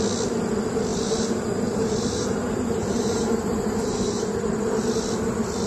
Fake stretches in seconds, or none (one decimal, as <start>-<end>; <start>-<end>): 0.9-4.3